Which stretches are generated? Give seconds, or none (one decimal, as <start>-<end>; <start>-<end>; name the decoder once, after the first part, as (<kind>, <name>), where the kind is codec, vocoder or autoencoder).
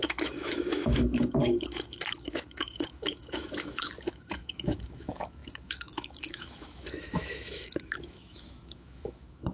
0.0-9.5 (autoencoder, DAC-VAE)